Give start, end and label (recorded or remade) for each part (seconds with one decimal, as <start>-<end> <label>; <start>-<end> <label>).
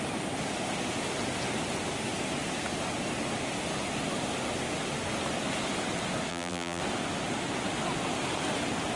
0.0-6.3 recorded; 6.3-6.8 remade; 6.8-9.0 recorded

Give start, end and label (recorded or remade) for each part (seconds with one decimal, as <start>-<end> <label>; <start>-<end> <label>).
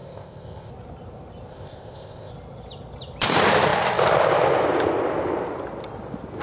0.0-0.7 remade; 0.7-1.5 recorded; 1.5-2.3 remade; 2.3-6.4 recorded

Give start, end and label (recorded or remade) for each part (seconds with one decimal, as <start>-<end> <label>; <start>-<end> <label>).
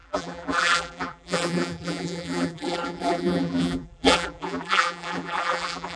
0.0-6.0 remade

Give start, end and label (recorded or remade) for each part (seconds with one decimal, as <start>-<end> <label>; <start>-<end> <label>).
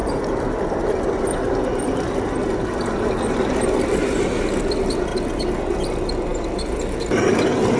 0.0-7.8 recorded